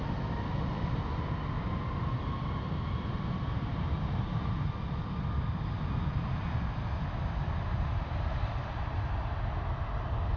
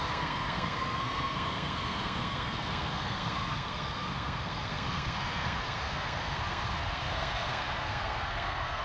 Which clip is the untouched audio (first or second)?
first